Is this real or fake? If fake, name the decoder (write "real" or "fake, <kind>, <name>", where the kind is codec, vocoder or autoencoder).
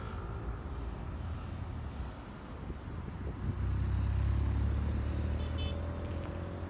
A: real